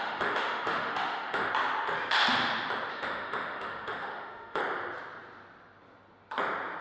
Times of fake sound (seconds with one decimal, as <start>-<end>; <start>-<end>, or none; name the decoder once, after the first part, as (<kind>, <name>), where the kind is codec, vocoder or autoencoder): 0.0-1.5 (autoencoder, DAC-VAE); 2.9-4.6